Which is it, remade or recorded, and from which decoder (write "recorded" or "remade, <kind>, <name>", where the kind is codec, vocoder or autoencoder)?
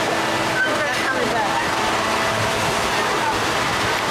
recorded